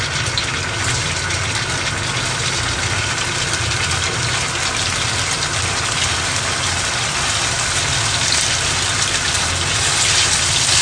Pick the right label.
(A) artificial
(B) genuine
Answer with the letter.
B